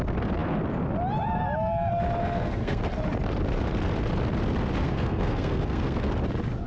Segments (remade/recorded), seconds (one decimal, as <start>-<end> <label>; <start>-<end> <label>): 0.0-2.2 recorded; 2.2-2.8 remade; 2.8-4.8 recorded; 4.8-6.0 remade; 6.0-6.7 recorded